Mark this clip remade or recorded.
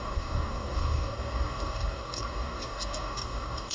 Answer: remade